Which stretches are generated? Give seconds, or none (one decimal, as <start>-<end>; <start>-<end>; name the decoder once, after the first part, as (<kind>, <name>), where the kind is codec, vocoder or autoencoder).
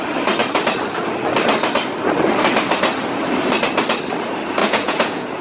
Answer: 4.6-5.4 (vocoder, Vocos)